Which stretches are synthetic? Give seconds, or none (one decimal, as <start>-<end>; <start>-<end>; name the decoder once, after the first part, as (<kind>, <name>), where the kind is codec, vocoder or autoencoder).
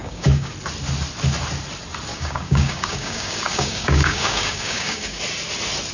0.0-0.5 (codec, DAC); 2.1-5.2